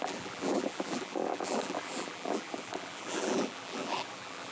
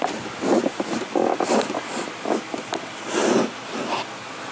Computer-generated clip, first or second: first